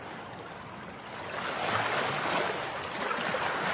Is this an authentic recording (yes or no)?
yes